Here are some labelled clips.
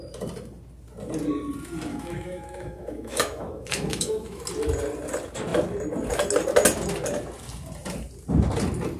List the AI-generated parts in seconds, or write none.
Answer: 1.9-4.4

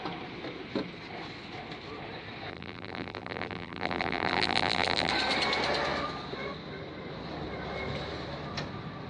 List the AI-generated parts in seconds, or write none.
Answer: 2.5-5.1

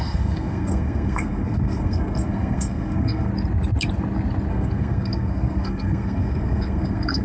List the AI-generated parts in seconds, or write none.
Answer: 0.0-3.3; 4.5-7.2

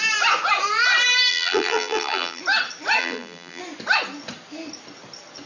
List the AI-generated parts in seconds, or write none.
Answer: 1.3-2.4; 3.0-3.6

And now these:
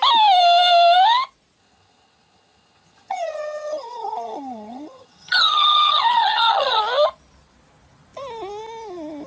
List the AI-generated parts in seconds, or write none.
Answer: 1.6-6.8

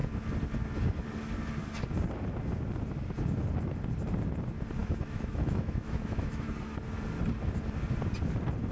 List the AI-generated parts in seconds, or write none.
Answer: 4.8-6.5

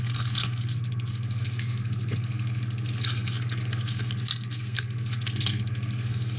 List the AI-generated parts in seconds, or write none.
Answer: 0.0-6.4

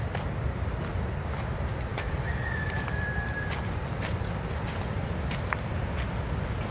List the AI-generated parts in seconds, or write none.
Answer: 1.9-5.3